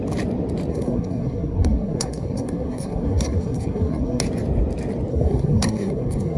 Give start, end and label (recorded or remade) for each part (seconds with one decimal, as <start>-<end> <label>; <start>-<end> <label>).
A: 0.0-0.7 recorded; 0.7-4.2 remade; 4.2-5.1 recorded; 5.1-6.4 remade

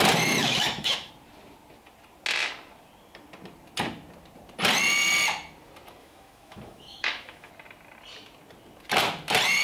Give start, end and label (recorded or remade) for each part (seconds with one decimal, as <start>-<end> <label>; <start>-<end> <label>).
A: 0.0-0.4 recorded; 0.4-1.1 remade; 1.1-6.0 recorded; 6.0-7.5 remade; 7.5-9.6 recorded

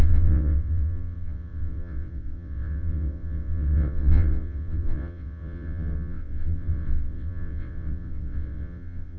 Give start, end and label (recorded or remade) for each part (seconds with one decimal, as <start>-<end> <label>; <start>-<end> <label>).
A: 0.0-9.2 remade

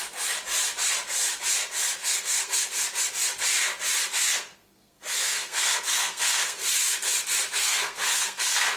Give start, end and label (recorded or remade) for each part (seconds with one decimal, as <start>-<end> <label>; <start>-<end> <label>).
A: 0.0-2.0 recorded; 2.0-2.8 remade; 2.8-4.2 recorded; 4.2-6.7 remade; 6.7-7.6 recorded; 7.6-8.8 remade

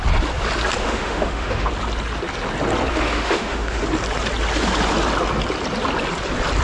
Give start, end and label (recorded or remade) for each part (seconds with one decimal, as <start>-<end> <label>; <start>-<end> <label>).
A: 0.0-0.8 recorded; 0.8-1.7 remade; 1.7-2.9 recorded; 2.9-3.8 remade; 3.8-6.6 recorded

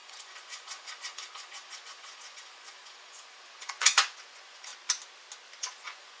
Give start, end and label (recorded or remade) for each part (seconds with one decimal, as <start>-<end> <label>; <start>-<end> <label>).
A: 0.0-4.7 remade; 4.7-5.6 recorded; 5.6-6.2 remade

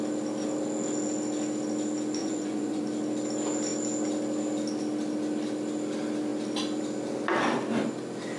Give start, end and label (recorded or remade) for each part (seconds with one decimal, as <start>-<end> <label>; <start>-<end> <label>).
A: 0.0-2.2 recorded; 2.2-2.8 remade; 2.8-8.4 recorded

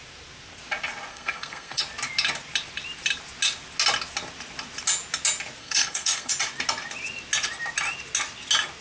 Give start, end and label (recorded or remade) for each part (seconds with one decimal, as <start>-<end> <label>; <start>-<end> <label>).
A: 0.0-1.1 recorded; 1.1-1.8 remade; 1.8-5.6 recorded; 5.6-6.3 remade; 6.3-8.8 recorded